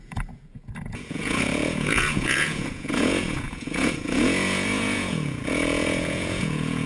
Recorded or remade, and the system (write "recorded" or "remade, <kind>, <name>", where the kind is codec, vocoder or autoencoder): remade, vocoder, Vocos